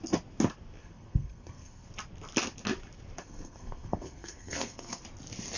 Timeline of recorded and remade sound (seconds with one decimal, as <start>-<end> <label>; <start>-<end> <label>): 0.0-0.8 recorded; 0.8-1.9 remade; 1.9-3.2 recorded; 3.2-5.0 remade; 5.0-5.6 recorded